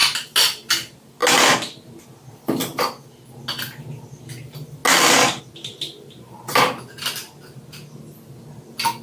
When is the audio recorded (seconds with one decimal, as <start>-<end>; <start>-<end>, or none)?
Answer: 0.0-9.0

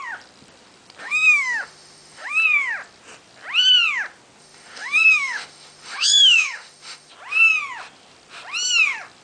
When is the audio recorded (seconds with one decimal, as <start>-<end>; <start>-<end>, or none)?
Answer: 0.0-1.0; 2.4-4.4; 7.1-9.2

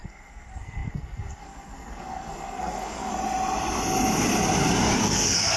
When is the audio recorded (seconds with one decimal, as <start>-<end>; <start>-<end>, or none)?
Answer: 3.1-5.0

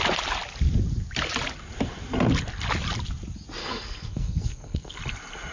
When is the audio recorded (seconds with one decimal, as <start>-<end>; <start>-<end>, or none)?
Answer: 0.0-3.6; 5.0-5.5

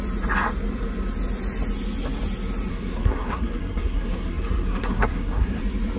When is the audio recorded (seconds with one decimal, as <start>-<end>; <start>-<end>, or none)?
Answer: 0.0-2.7; 5.6-6.0

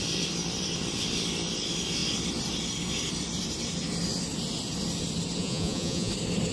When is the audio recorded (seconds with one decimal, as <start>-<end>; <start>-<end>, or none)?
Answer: 0.0-5.4; 6.1-6.5